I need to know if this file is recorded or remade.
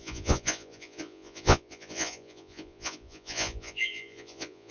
remade